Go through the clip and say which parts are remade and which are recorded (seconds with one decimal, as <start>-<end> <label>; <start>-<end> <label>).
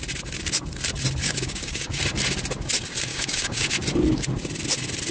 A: 0.0-1.2 recorded; 1.2-2.0 remade; 2.0-3.1 recorded; 3.1-3.7 remade; 3.7-5.1 recorded